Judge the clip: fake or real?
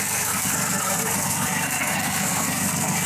fake